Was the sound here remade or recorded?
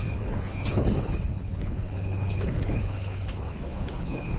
remade